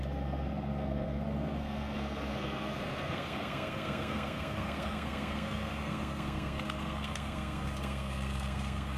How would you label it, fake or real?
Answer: fake